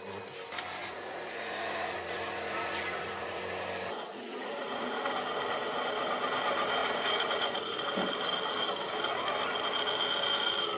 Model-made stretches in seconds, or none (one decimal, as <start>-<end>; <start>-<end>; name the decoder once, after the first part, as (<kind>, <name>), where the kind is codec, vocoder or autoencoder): 0.8-3.4 (vocoder, Vocos); 4.1-5.0; 6.8-7.8